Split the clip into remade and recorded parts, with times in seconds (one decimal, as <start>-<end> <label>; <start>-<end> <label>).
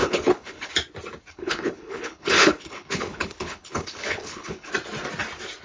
0.0-0.7 remade; 0.7-1.3 recorded; 1.3-4.7 remade; 4.7-5.6 recorded